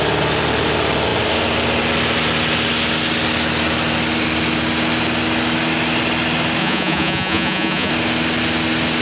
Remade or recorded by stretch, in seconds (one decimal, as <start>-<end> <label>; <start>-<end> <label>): 0.0-6.6 recorded; 6.6-7.9 remade; 7.9-9.0 recorded